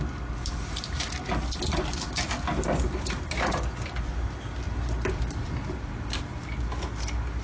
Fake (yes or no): no